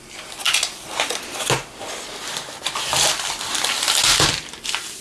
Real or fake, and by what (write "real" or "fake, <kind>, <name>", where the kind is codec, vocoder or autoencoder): real